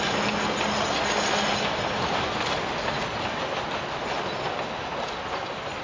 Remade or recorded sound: recorded